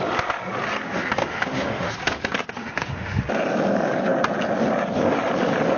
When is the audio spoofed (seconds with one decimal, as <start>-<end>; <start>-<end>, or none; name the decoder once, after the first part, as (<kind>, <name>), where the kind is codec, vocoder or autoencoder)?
1.2-1.9 (autoencoder, DAC-VAE); 2.6-3.2